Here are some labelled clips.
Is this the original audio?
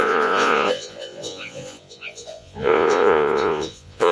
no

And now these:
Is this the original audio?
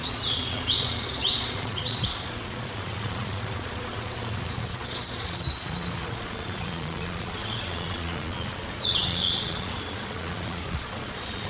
no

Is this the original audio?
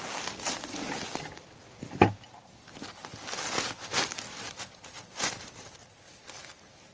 yes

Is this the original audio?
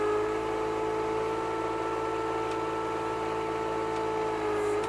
yes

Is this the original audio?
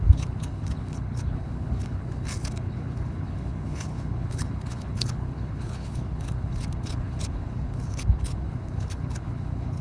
no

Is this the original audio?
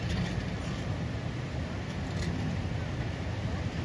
yes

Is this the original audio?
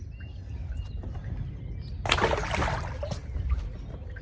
yes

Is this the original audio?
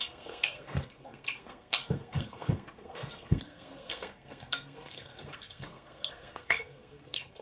no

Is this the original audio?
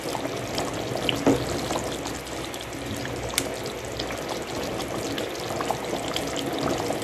no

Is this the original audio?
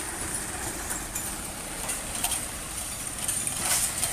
no